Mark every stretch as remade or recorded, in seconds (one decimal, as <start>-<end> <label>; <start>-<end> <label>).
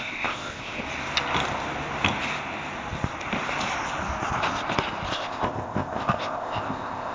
0.0-0.8 remade; 0.8-5.1 recorded; 5.1-7.1 remade